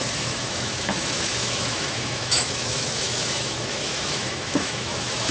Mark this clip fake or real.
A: fake